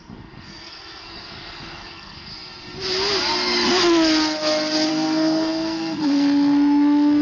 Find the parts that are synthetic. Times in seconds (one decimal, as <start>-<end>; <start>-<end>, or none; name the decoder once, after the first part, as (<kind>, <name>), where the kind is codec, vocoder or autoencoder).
0.0-2.3 (codec, SNAC); 4.9-7.2